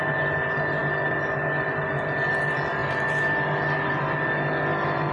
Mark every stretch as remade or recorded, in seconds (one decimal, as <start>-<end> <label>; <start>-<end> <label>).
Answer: 0.0-5.1 recorded